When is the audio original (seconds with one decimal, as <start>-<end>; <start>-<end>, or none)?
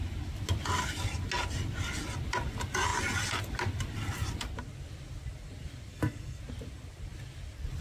0.0-5.9; 6.4-7.8